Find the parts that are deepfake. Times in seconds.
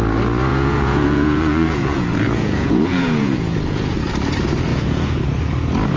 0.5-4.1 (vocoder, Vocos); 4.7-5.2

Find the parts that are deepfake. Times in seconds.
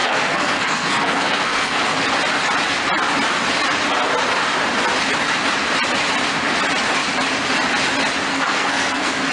0.0-1.8 (codec, SNAC); 8.3-9.3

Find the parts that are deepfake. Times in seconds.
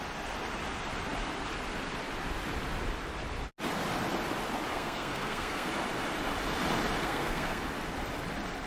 4.7-5.7 (codec, SNAC); 7.0-7.6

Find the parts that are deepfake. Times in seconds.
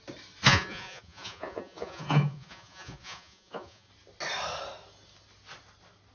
0.4-3.9 (vocoder, Vocos)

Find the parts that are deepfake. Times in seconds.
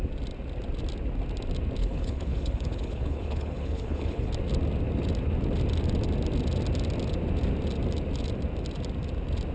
1.8-4.3 (codec, HILCodec)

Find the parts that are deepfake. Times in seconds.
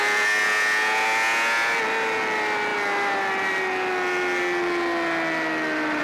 none